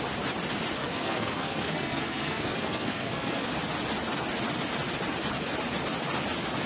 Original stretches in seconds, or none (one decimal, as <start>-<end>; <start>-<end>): 0.0-0.8; 3.5-6.7